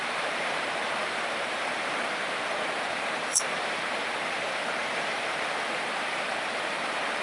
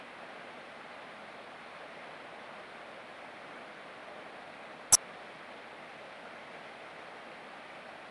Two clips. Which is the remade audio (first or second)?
first